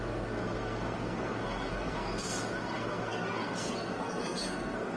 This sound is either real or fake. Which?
fake